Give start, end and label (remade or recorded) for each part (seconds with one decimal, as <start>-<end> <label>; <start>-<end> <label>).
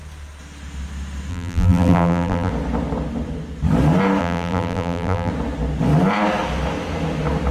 0.0-1.3 recorded; 1.3-2.5 remade; 2.5-4.2 recorded; 4.2-5.3 remade; 5.3-7.5 recorded